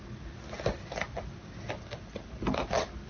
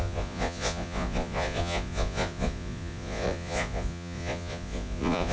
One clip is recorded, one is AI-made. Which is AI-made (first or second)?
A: second